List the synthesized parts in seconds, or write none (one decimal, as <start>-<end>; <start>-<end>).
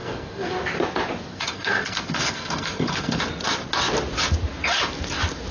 0.0-0.5; 1.3-3.2